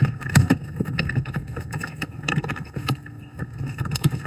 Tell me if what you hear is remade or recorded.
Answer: remade